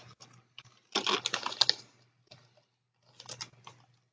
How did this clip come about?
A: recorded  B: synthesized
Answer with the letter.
A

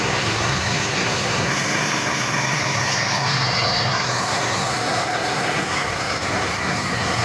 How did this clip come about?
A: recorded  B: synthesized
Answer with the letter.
B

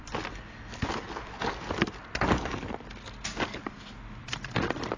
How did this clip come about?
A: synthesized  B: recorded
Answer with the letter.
B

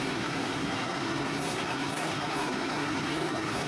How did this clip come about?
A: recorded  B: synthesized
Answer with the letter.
B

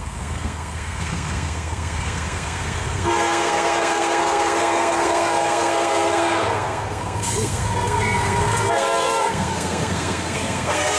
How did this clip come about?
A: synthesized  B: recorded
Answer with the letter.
A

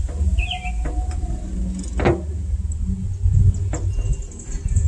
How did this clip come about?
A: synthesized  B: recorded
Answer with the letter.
B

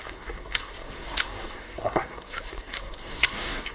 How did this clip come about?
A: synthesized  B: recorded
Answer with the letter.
A